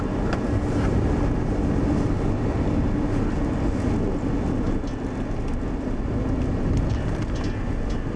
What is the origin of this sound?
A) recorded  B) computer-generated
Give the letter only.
A